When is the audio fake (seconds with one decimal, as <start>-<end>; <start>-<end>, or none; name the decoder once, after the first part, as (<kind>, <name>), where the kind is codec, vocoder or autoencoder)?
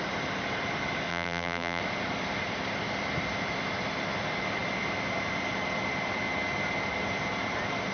1.1-1.8 (vocoder, BigVGAN v2)